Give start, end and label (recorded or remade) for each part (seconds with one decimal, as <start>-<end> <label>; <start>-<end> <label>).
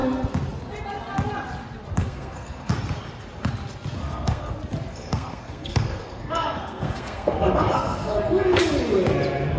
0.0-2.0 recorded; 2.0-2.7 remade; 2.7-4.0 recorded; 4.0-4.5 remade; 4.5-4.9 recorded; 4.9-8.6 remade; 8.6-9.6 recorded